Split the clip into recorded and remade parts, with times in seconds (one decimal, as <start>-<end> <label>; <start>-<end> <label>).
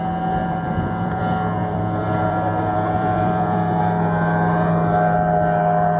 0.0-0.4 recorded; 0.4-1.2 remade; 1.2-1.6 recorded; 1.6-3.8 remade; 3.8-6.0 recorded